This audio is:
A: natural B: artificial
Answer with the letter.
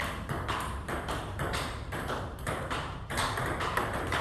B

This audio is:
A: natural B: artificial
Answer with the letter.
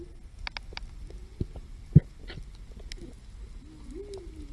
A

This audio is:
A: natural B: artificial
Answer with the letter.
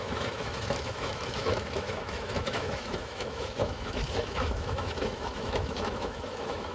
B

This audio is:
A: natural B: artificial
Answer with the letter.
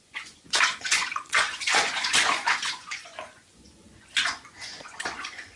B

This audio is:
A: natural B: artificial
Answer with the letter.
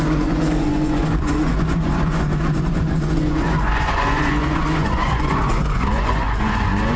B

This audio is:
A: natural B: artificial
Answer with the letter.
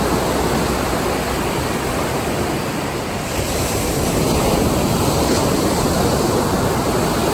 A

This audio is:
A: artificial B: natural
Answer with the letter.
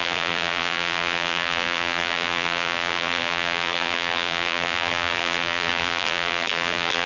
A